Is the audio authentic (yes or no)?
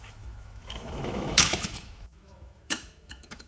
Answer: no